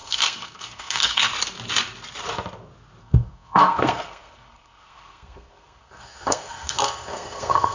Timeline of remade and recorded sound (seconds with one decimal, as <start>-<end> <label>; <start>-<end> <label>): 0.0-1.3 remade; 1.3-3.0 recorded; 3.0-7.7 remade